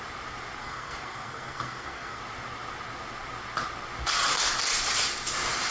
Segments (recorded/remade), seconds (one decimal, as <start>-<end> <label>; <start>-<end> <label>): 0.0-0.6 recorded; 0.6-2.2 remade; 2.2-5.7 recorded